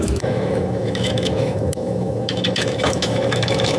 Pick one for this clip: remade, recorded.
remade